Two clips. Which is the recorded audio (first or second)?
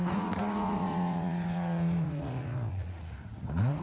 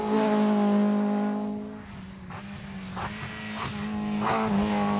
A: second